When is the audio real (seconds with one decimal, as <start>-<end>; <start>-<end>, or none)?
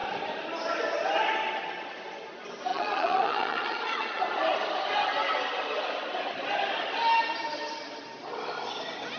0.0-2.7; 4.2-9.2